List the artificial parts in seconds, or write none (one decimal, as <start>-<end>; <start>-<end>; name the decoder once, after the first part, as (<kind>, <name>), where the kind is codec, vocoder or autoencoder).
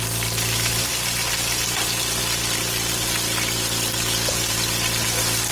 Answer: none